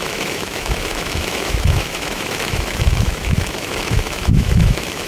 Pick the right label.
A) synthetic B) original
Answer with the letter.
A